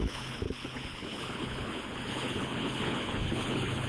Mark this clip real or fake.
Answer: fake